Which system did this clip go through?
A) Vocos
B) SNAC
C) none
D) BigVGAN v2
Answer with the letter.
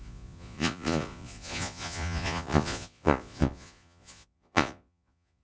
A